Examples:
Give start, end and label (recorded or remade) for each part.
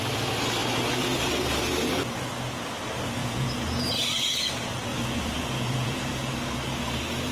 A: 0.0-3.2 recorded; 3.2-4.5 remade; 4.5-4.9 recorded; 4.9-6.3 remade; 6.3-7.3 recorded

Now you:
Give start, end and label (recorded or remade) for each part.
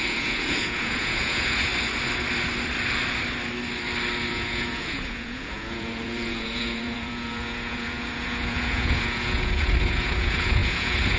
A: 0.0-1.7 remade; 1.7-4.3 recorded; 4.3-11.2 remade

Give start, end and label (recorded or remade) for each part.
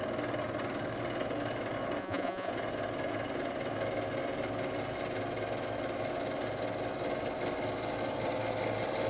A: 0.0-2.0 recorded; 2.0-2.5 remade; 2.5-9.1 recorded